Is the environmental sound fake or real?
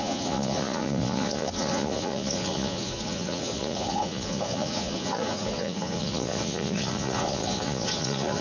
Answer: fake